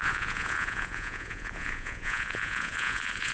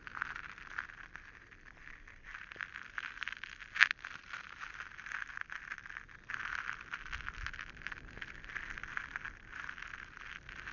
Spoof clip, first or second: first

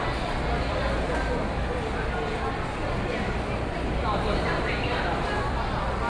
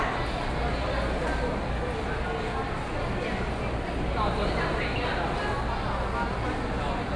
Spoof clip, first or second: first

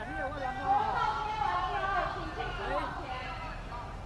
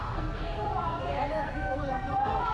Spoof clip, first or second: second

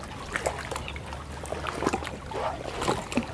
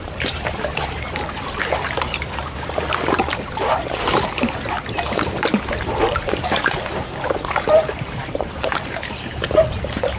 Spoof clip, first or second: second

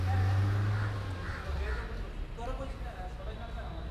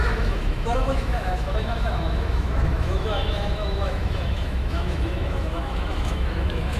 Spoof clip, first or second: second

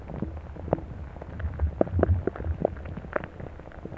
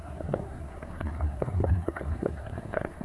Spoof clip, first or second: second